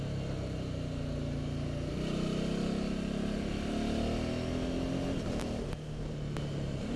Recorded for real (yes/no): yes